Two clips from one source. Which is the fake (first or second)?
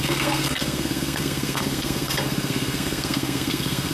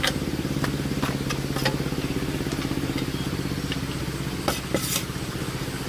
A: first